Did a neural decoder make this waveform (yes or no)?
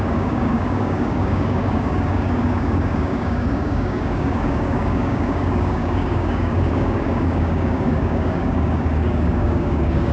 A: yes